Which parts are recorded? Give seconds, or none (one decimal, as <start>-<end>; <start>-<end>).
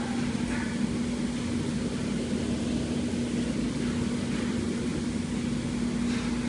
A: 0.0-6.5